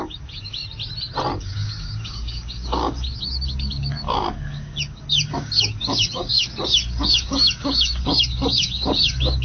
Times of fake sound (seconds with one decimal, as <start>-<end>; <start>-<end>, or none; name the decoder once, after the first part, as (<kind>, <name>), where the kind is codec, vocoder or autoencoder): 0.0-0.6 (codec, DAC); 1.4-9.4